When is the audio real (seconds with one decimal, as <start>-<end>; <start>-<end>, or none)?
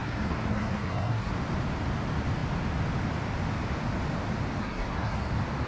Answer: 1.3-4.6; 5.3-5.7